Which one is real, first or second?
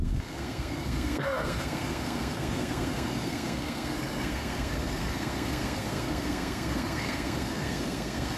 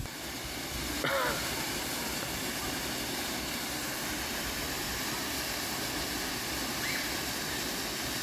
second